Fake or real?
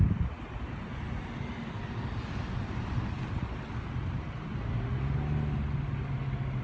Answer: real